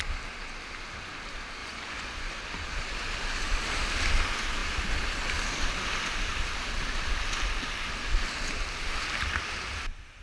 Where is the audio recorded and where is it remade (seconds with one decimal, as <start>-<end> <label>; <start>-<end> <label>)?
0.0-1.6 recorded; 1.6-2.4 remade; 2.4-10.2 recorded